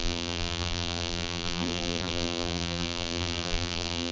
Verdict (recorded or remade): remade